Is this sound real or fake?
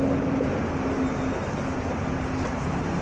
real